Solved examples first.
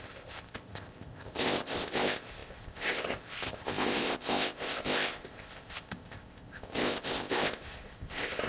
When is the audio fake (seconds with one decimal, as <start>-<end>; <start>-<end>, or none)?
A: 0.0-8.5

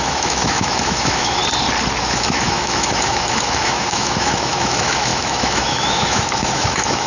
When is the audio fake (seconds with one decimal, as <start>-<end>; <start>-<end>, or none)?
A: 0.0-1.4; 2.0-7.1

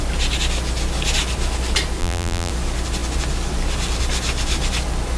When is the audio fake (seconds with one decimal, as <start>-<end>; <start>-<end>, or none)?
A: 2.0-2.5

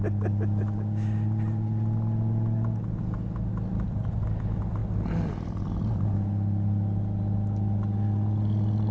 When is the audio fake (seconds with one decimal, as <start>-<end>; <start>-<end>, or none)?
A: none

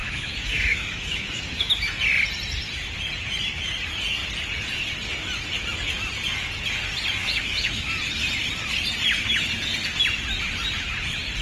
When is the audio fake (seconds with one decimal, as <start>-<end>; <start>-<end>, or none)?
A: 0.0-1.9; 7.2-7.9